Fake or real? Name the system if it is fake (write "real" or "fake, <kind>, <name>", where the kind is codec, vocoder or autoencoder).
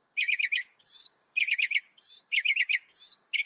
fake, codec, DAC